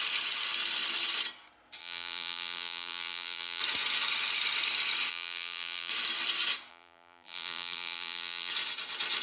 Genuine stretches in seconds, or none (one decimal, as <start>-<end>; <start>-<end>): 0.0-1.8; 3.6-5.1; 5.9-6.7; 8.5-9.2